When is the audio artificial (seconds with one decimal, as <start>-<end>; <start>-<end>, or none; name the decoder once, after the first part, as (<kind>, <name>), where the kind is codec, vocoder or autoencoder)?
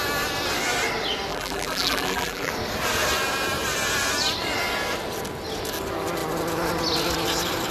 1.3-2.5 (vocoder, BigVGAN v2)